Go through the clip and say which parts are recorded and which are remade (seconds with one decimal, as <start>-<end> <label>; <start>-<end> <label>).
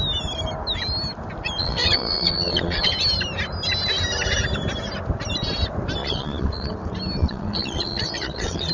0.0-1.6 recorded; 1.6-2.9 remade; 2.9-6.0 recorded; 6.0-6.7 remade; 6.7-7.2 recorded; 7.2-8.7 remade